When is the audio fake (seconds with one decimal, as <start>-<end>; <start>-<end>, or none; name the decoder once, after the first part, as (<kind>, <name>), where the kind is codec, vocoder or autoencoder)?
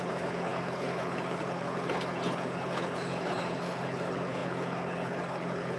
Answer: 0.0-5.8 (codec, HILCodec)